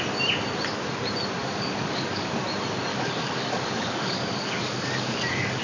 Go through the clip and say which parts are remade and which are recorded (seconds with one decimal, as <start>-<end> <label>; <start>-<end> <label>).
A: 0.0-1.4 recorded; 1.4-2.4 remade; 2.4-2.9 recorded; 2.9-5.6 remade